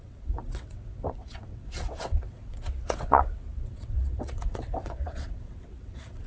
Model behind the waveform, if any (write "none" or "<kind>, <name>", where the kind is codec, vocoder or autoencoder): vocoder, WaveNeXt